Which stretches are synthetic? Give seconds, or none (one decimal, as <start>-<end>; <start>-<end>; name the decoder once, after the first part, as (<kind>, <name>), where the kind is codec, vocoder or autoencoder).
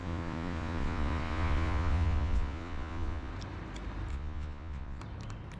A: 0.0-3.3 (vocoder, Vocos); 4.1-5.0